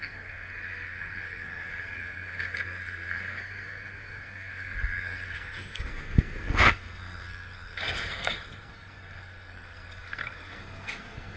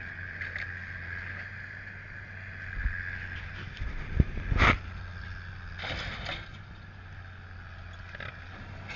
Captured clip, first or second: second